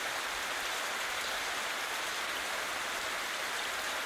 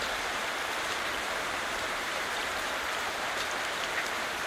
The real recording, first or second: first